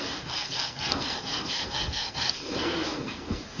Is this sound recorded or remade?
remade